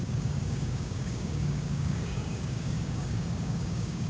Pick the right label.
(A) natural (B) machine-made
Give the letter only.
B